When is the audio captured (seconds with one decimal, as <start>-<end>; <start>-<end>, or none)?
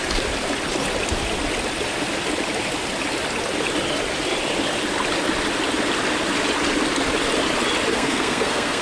0.0-7.9